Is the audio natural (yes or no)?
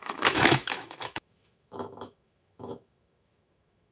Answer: no